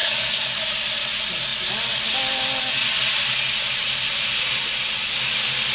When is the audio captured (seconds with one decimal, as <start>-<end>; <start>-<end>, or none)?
0.6-5.7